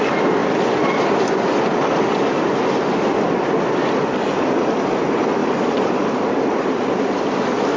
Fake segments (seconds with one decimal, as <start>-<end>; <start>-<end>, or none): none